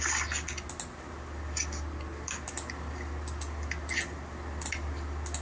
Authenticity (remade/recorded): recorded